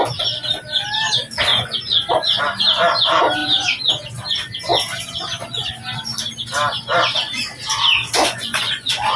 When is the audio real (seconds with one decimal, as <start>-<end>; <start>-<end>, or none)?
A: 0.0-1.5; 2.4-8.2